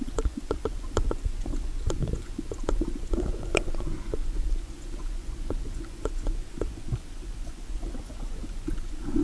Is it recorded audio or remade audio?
remade